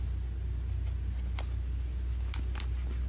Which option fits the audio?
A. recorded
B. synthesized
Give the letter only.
A